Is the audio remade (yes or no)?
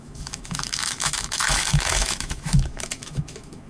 yes